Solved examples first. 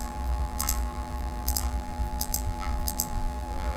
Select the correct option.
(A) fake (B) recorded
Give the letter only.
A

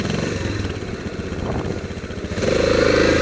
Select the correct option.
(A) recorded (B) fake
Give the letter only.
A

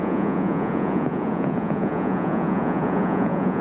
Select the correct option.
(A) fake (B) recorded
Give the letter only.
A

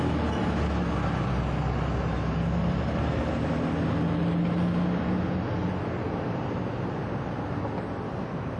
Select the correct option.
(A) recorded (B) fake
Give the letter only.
A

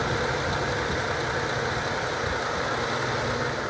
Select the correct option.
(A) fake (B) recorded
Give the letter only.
B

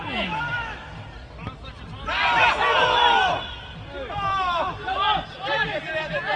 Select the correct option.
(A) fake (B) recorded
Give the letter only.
B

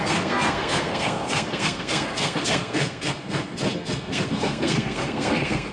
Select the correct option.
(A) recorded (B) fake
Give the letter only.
B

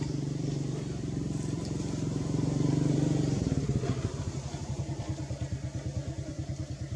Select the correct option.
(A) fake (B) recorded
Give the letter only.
A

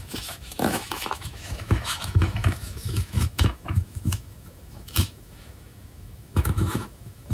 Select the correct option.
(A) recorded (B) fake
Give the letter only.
B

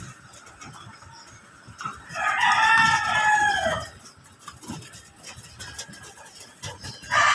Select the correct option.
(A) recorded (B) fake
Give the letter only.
A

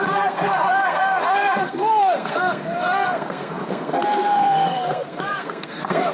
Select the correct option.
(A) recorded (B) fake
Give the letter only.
B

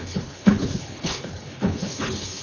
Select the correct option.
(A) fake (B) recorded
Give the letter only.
A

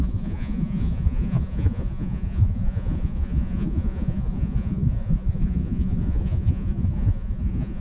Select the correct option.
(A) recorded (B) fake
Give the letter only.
B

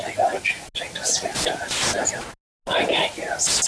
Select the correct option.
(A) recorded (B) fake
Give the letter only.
A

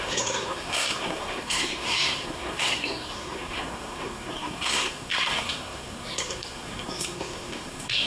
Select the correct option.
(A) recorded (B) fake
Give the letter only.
B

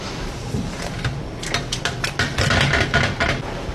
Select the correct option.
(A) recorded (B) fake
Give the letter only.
A